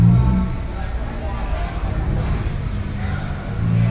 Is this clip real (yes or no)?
yes